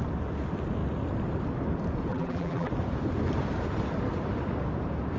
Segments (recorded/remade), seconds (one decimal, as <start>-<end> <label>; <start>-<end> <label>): 0.0-2.1 recorded; 2.1-2.7 remade; 2.7-5.2 recorded